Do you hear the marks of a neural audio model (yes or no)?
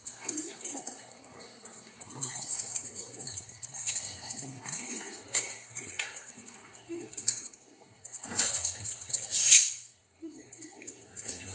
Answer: yes